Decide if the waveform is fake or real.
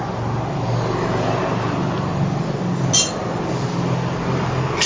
real